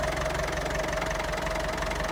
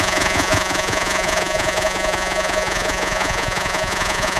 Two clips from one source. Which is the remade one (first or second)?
second